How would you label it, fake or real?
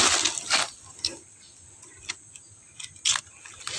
real